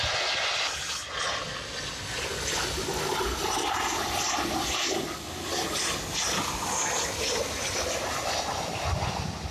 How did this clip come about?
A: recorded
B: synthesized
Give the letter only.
A